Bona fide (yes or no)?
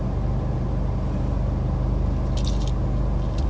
yes